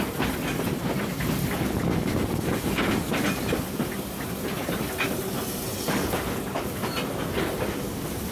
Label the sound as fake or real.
real